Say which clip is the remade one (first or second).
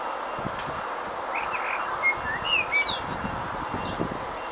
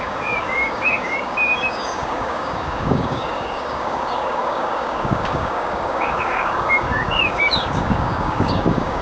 second